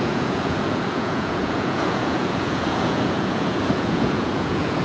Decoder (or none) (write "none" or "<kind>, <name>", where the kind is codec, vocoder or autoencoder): vocoder, Vocos